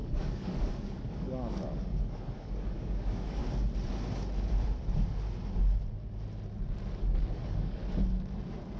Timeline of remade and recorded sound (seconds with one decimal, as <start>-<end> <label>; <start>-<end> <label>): 0.0-3.4 remade; 3.4-7.0 recorded; 7.0-7.8 remade; 7.8-8.8 recorded